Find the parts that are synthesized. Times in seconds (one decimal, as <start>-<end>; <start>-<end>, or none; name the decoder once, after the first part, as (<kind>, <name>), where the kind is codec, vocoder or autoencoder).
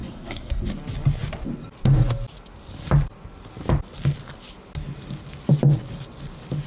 0.0-0.7 (codec, SNAC)